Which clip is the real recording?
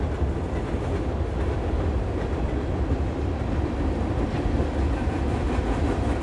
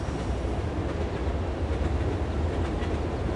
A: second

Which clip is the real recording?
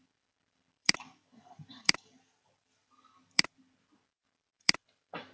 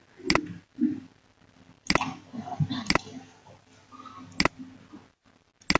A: second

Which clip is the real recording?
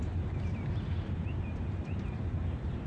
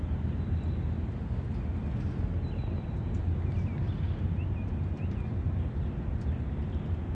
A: second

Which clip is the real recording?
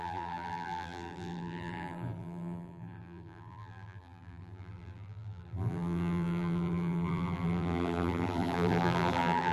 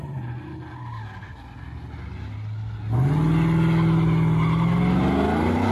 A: second